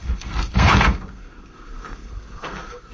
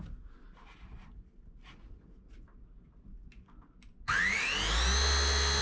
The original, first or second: second